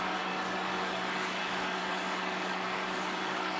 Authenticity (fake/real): fake